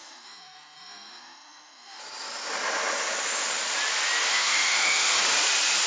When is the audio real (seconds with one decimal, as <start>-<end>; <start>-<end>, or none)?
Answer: 2.0-4.3; 5.2-5.9